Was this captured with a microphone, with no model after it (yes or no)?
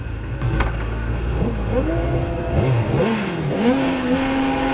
no